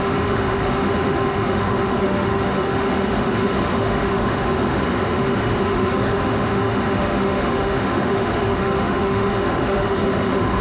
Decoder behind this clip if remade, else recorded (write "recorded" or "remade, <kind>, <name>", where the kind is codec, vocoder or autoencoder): remade, autoencoder, DAC-VAE